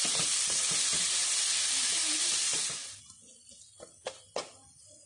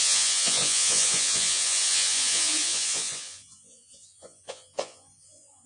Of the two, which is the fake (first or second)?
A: second